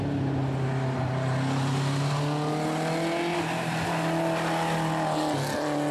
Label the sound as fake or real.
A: real